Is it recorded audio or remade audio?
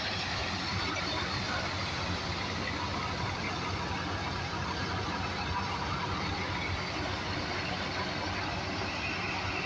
recorded